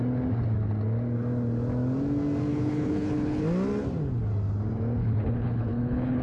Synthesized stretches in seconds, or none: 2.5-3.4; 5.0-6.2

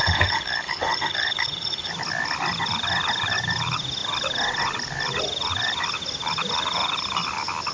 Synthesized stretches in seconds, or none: 0.0-1.9

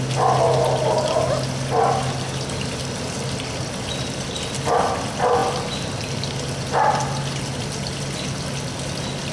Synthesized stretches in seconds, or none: none